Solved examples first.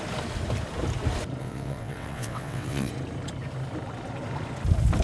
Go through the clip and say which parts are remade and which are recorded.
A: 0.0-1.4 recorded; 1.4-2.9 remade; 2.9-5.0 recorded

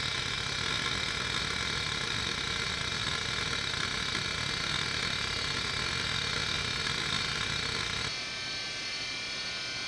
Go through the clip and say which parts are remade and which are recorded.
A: 0.0-9.9 recorded

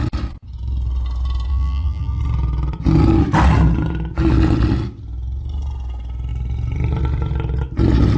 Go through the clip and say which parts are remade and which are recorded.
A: 0.0-1.5 recorded; 1.5-2.2 remade; 2.2-8.2 recorded

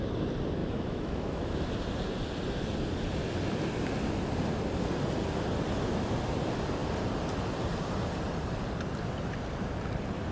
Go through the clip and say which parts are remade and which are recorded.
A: 0.0-0.6 recorded; 0.6-1.5 remade; 1.5-10.3 recorded

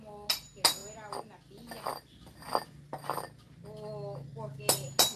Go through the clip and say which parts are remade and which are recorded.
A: 0.0-5.2 recorded

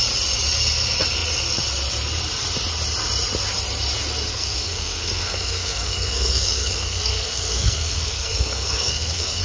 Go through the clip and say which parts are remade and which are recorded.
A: 0.0-4.3 recorded; 4.3-9.4 remade

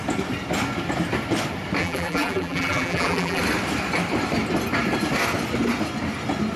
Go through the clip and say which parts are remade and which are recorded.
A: 0.0-1.8 recorded; 1.8-3.4 remade; 3.4-6.6 recorded